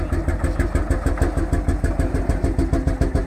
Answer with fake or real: real